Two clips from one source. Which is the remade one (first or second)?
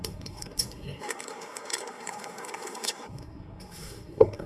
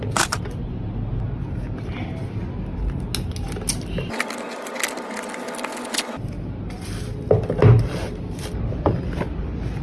first